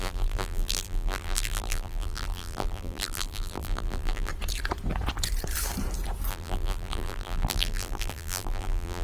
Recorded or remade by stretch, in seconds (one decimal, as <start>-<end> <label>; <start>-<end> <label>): 0.0-4.3 remade; 4.3-6.3 recorded; 6.3-9.0 remade